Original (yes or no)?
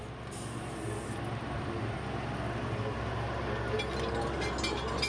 yes